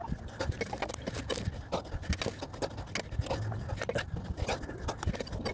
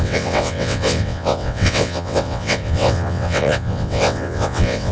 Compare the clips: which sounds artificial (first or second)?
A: second